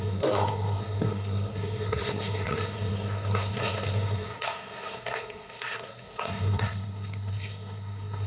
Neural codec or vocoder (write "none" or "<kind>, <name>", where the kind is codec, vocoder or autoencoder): codec, SNAC